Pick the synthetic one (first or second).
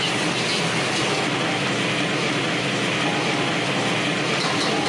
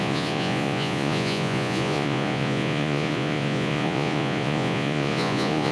second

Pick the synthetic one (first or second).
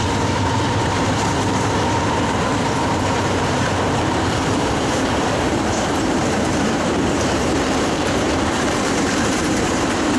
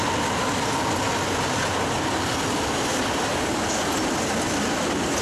first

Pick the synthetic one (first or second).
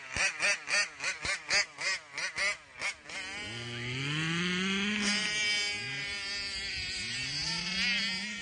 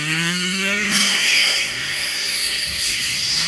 second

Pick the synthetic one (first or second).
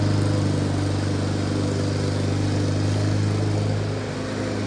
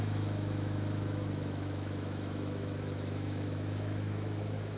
second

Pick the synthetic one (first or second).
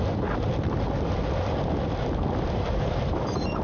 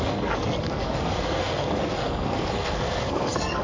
second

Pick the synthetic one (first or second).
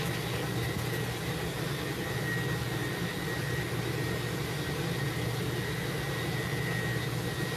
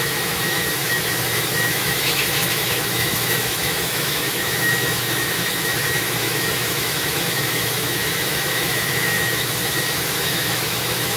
second